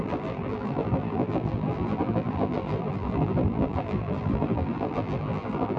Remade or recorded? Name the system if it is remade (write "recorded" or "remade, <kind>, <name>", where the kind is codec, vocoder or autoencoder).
remade, vocoder, BigVGAN v2